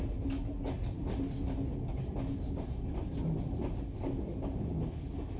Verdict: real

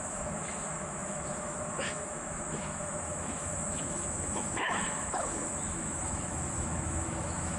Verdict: fake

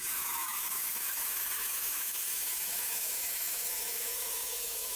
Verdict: fake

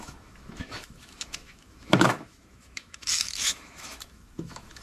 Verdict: fake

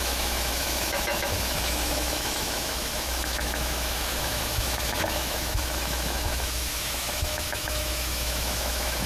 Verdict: fake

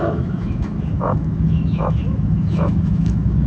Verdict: fake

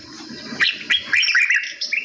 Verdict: real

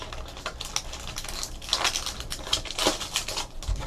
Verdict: real